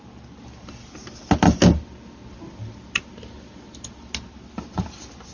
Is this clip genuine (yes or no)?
yes